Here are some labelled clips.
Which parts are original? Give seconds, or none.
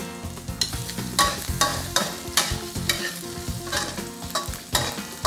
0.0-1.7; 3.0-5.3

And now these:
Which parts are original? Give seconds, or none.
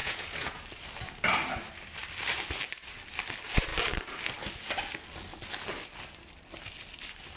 0.6-7.4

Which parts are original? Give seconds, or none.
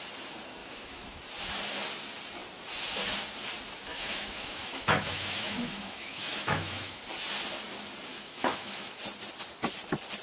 0.0-0.6; 1.2-3.9; 7.0-8.1; 9.0-10.2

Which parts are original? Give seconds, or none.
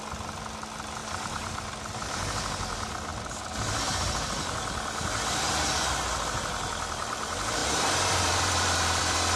0.0-1.0; 1.7-7.6; 9.0-9.4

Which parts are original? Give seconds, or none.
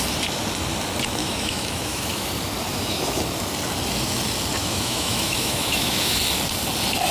0.0-1.2; 2.3-2.7; 3.2-4.6; 6.2-7.1